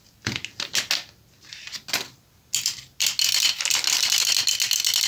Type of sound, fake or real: real